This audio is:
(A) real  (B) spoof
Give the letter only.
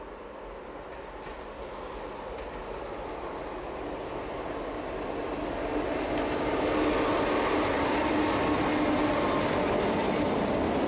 A